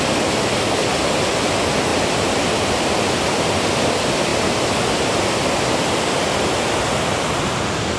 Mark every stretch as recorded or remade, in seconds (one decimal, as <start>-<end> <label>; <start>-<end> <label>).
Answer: 0.0-8.0 recorded